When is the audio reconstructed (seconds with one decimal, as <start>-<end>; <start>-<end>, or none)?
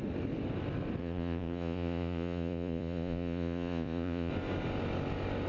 1.0-4.3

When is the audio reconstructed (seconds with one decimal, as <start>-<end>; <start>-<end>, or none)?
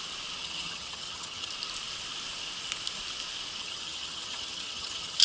0.4-1.5; 3.6-5.2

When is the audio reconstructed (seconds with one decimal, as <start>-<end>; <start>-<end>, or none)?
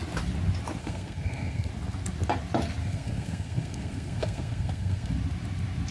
0.8-1.7; 2.8-5.1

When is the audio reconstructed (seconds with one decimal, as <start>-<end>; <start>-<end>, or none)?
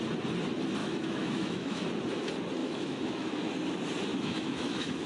0.8-1.8; 2.6-3.5; 4.1-5.1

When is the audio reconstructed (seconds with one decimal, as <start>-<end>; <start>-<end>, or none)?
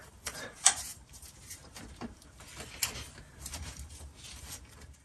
0.0-2.5; 3.5-5.0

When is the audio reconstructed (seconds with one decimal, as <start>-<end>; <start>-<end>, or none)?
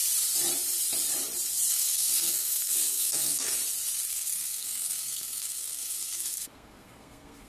1.7-3.6; 4.1-7.5